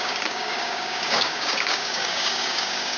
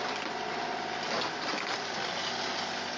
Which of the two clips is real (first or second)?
second